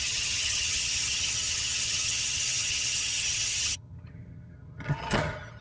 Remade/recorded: remade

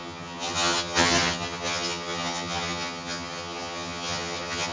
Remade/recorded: remade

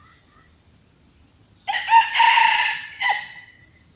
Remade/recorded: recorded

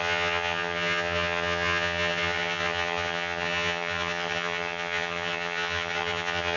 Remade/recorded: remade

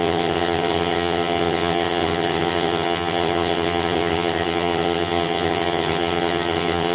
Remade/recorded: remade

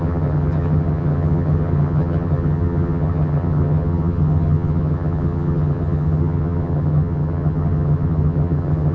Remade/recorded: remade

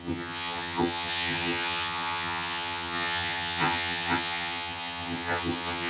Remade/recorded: remade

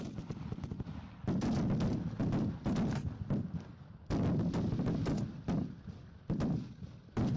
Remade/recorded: recorded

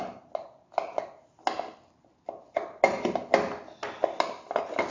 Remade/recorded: recorded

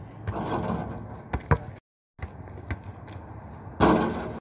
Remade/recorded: recorded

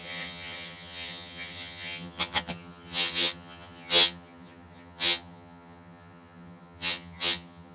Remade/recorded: remade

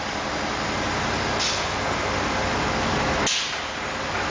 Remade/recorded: recorded